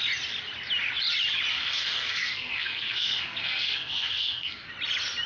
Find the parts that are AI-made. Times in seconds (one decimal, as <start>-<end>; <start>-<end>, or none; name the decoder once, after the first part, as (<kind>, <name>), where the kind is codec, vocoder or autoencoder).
1.5-4.7 (codec, SNAC)